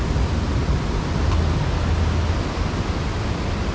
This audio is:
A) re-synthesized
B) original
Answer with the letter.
B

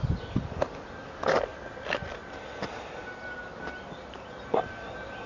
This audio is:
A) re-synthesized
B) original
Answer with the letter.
B